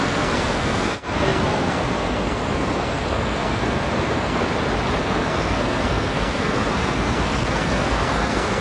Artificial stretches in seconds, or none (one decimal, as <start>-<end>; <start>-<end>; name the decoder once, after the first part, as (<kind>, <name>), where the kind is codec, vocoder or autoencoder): 0.0-4.4 (codec, SNAC); 5.0-8.6